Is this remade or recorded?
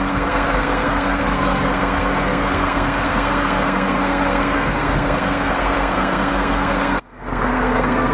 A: remade